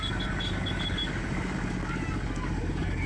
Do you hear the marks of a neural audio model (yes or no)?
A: yes